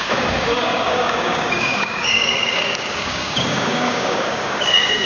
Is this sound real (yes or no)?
no